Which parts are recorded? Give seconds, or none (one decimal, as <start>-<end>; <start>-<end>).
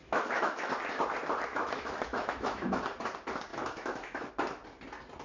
0.7-1.5; 2.8-3.5; 4.3-5.2